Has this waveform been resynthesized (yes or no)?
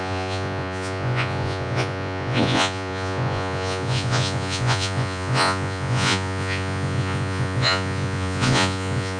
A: yes